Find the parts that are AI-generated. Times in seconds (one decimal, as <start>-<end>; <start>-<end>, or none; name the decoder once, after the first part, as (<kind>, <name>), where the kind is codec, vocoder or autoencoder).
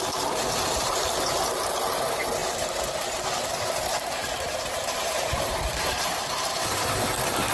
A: 2.4-6.9 (vocoder, BigVGAN v2)